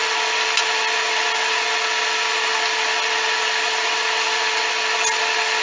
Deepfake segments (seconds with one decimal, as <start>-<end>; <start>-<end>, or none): none